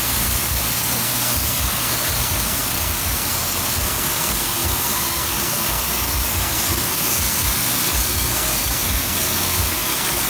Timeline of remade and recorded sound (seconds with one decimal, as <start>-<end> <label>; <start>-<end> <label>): 0.0-10.3 remade